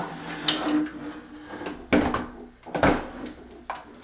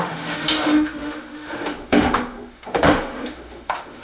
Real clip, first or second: first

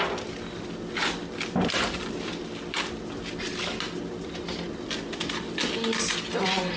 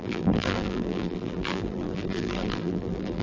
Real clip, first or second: first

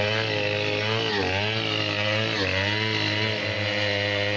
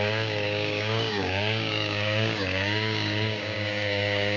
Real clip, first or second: first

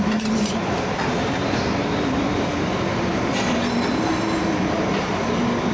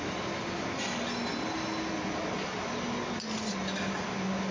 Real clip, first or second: second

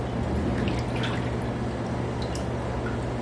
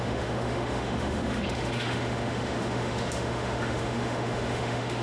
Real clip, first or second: first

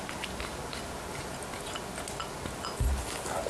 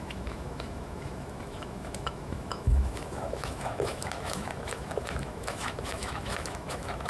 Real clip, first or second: first